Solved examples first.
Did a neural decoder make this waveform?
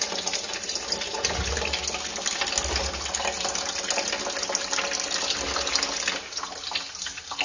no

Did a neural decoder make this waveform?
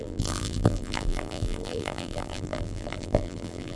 yes